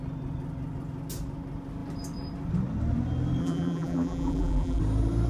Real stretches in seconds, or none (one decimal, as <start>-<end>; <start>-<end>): 0.0-3.4; 4.8-5.3